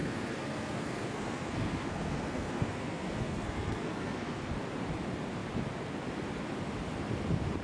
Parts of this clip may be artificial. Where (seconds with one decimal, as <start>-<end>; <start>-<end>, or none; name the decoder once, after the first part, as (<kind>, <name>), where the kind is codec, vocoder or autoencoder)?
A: 0.0-4.5 (codec, SNAC)